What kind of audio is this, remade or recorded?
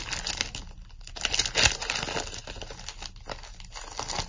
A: recorded